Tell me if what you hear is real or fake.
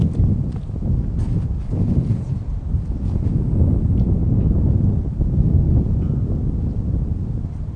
real